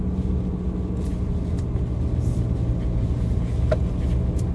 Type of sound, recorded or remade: recorded